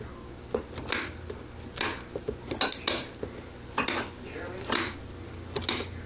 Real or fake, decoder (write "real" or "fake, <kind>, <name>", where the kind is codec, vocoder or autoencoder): real